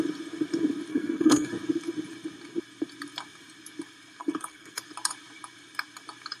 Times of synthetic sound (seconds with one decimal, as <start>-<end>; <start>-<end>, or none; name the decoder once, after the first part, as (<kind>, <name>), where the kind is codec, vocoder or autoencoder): 0.9-1.5 (codec, SNAC); 4.2-4.8

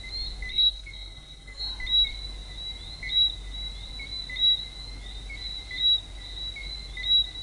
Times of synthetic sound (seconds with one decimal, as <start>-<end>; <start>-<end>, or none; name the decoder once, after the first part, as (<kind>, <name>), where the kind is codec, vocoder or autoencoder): 0.5-1.6 (codec, SNAC)